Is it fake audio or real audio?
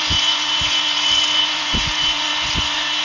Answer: fake